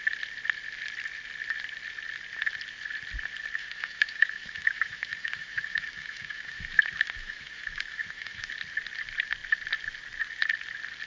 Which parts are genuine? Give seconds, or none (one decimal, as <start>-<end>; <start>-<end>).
0.0-3.6; 8.5-11.1